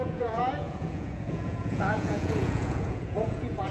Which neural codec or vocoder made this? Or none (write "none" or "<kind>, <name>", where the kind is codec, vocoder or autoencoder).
vocoder, Vocos